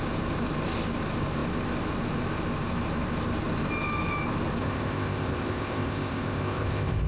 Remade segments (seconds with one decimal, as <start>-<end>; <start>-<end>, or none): 4.6-7.1